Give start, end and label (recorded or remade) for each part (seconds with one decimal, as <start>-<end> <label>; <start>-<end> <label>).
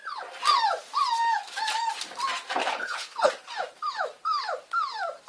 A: 0.0-2.6 recorded; 2.6-3.3 remade; 3.3-5.3 recorded